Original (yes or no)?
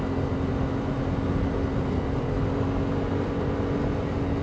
yes